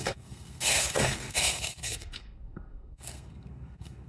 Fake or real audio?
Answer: fake